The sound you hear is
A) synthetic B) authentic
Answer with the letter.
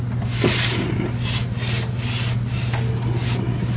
B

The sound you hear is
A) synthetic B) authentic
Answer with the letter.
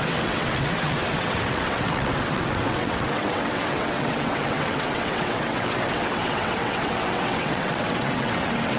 A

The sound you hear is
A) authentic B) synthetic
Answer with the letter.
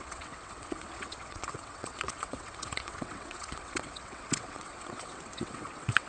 B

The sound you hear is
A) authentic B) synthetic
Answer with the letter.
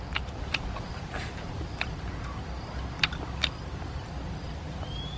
A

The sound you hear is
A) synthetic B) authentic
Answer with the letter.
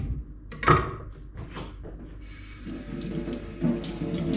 B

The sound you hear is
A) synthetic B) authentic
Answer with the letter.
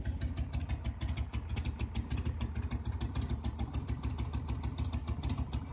B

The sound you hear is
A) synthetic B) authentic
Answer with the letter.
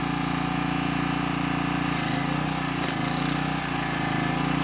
B